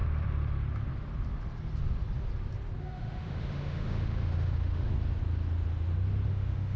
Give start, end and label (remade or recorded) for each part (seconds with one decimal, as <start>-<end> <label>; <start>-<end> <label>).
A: 0.0-2.8 recorded; 2.8-4.9 remade; 4.9-6.3 recorded; 6.3-6.8 remade